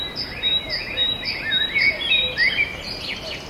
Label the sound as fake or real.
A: fake